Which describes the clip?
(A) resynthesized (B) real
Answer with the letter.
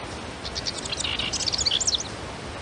B